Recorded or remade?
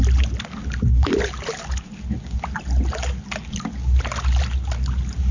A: recorded